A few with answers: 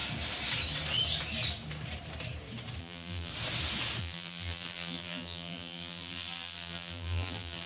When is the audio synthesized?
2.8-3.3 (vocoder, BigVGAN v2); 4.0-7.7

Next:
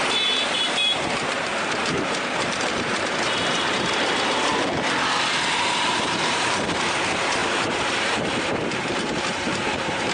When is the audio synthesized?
0.0-4.5 (vocoder, BigVGAN v2); 5.3-10.1